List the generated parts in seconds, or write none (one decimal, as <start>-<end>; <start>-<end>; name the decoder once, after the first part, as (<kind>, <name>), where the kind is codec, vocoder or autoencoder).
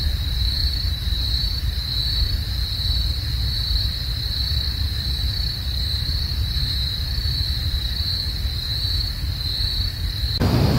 0.6-1.6 (vocoder, BigVGAN v2); 4.4-6.3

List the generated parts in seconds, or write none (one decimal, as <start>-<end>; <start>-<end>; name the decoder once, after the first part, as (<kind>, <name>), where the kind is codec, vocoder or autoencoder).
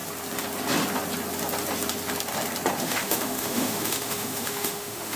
2.8-5.2 (autoencoder, DAC-VAE)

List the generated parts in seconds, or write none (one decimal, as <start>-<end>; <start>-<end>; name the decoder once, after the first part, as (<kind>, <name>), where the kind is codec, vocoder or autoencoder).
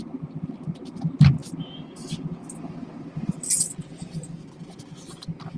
none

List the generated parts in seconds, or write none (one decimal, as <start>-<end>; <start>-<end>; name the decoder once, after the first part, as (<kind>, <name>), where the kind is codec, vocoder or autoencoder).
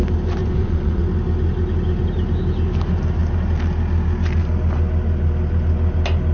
0.4-1.0 (vocoder, Vocos)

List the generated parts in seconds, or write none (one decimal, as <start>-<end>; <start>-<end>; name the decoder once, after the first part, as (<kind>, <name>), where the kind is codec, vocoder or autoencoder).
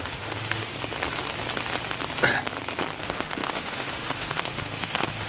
0.0-0.7 (autoencoder, DAC-VAE); 3.0-5.3